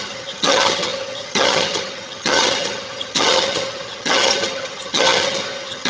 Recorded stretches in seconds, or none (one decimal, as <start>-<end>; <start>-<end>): none